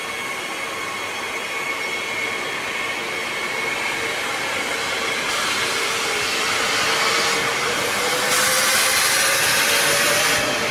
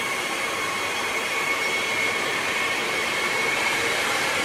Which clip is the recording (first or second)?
first